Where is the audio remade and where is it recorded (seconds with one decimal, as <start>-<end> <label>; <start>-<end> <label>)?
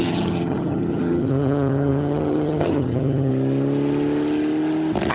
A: 0.0-3.3 remade; 3.3-5.1 recorded